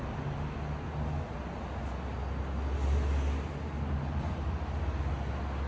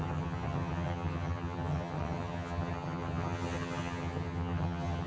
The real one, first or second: first